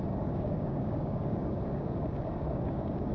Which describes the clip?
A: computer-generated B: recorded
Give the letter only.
A